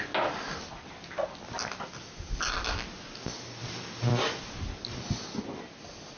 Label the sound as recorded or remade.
recorded